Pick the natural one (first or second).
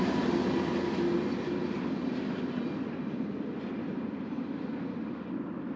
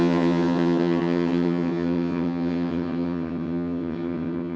first